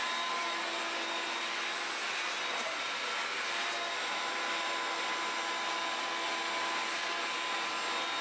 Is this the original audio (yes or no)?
yes